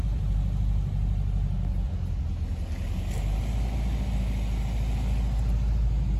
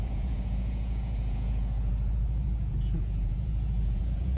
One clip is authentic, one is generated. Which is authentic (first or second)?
first